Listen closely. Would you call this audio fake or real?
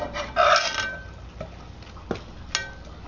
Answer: real